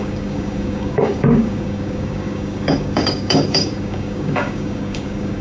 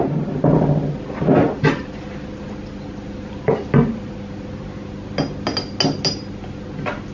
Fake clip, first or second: first